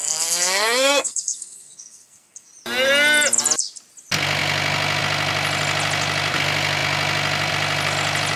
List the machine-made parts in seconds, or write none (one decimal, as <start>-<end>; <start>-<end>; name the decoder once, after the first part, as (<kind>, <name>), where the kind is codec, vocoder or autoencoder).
0.0-2.5 (codec, SNAC)